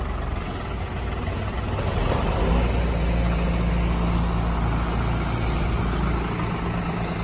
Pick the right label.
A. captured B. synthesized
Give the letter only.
A